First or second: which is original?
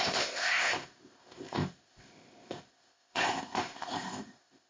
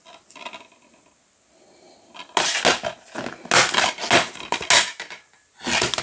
second